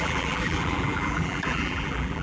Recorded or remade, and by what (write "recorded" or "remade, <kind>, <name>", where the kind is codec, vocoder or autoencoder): remade, vocoder, BigVGAN v2